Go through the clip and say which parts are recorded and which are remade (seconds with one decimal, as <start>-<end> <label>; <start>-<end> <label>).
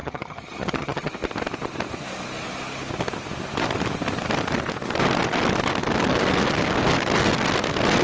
0.0-1.1 remade; 1.1-8.0 recorded